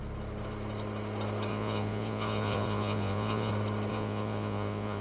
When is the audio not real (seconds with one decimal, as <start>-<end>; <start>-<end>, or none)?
1.5-3.5; 3.9-5.0